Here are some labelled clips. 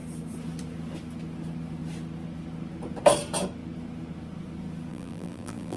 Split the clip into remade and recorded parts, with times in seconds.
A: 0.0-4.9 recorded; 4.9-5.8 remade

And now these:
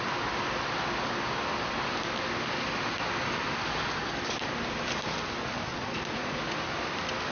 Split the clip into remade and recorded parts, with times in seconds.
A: 0.0-5.7 recorded; 5.7-6.4 remade; 6.4-7.3 recorded